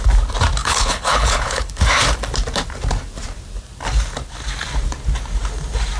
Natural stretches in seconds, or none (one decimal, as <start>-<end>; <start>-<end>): 0.0-0.6; 1.8-6.0

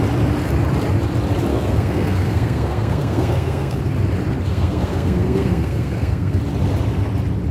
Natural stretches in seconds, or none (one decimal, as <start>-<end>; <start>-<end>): 0.0-1.5; 3.8-4.5; 6.4-7.5

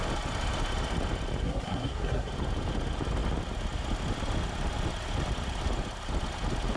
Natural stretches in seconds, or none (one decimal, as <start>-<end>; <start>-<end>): 0.0-1.4; 2.3-6.8

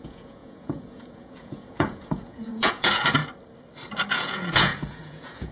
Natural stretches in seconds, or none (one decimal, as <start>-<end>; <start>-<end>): 3.2-4.1

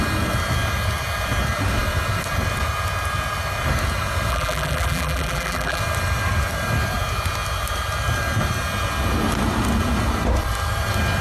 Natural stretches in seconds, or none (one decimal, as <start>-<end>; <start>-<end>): 0.0-4.3; 5.8-11.2

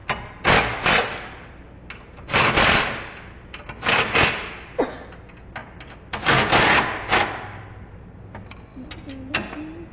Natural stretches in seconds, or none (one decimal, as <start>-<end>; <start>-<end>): 0.0-9.9

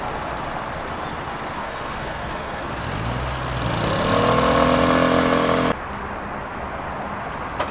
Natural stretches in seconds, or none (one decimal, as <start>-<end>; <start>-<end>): 0.0-1.6; 2.6-7.7